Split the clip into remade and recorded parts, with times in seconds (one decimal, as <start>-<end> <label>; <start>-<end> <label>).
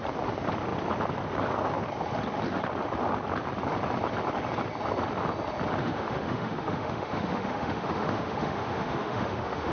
0.0-5.8 recorded; 5.8-9.7 remade